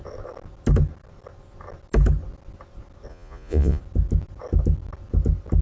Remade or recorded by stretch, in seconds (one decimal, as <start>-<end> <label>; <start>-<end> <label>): 0.0-3.1 recorded; 3.1-3.8 remade; 3.8-5.6 recorded